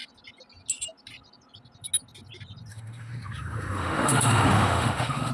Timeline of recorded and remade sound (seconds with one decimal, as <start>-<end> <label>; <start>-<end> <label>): 0.0-2.7 recorded; 2.7-5.3 remade

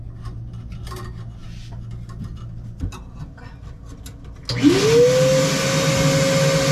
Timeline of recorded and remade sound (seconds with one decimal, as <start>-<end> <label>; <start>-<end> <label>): 0.0-6.7 recorded